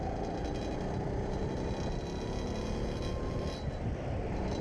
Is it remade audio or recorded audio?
recorded